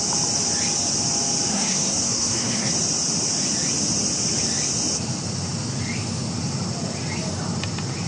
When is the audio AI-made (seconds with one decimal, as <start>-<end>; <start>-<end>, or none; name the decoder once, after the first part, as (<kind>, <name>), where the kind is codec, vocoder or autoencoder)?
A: 1.5-2.7 (codec, SNAC)